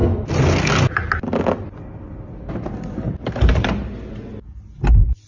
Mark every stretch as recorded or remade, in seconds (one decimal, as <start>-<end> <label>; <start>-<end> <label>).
0.0-5.3 recorded

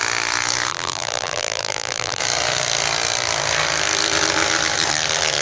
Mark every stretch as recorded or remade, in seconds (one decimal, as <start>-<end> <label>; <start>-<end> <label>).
0.0-0.7 recorded; 0.7-2.2 remade; 2.2-5.4 recorded

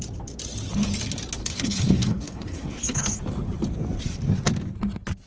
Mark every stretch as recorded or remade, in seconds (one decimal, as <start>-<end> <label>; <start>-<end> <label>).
0.0-1.4 recorded; 1.4-3.2 remade; 3.2-5.3 recorded